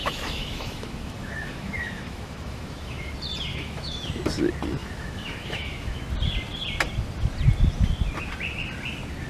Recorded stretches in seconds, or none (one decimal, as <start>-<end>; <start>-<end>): 3.1-3.5; 4.1-4.8; 6.0-9.3